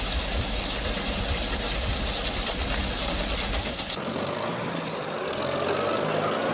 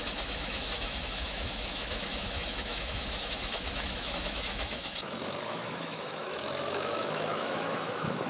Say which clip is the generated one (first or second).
second